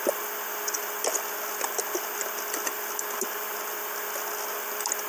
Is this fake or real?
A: real